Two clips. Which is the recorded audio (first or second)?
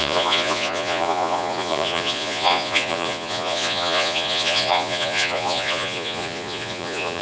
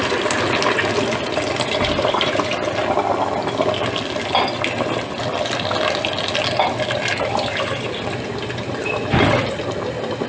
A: second